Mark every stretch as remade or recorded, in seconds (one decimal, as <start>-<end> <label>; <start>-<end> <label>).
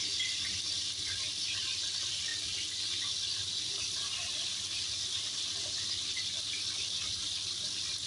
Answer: 0.0-8.1 recorded